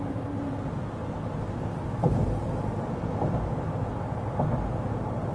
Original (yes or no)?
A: yes